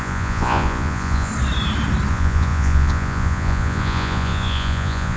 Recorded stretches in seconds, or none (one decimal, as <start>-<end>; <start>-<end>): 1.3-2.1